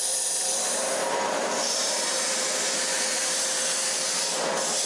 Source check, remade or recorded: remade